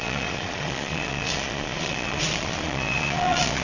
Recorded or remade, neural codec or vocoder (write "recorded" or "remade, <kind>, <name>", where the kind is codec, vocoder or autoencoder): remade, vocoder, Vocos